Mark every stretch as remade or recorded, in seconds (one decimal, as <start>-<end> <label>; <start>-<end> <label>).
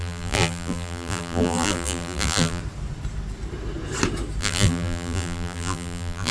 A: 0.0-2.6 remade; 2.6-4.4 recorded; 4.4-6.3 remade